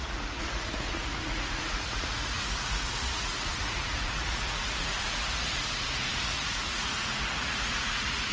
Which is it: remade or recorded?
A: remade